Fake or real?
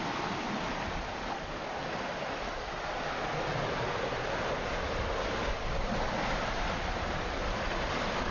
real